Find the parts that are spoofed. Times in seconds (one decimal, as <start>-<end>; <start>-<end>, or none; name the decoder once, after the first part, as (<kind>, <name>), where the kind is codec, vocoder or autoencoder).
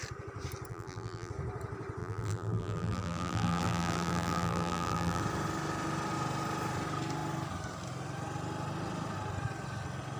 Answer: 0.7-1.3 (vocoder, BigVGAN v2); 2.0-5.2